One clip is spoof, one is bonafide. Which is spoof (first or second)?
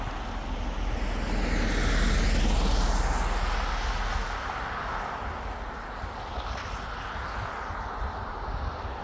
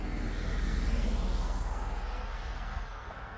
second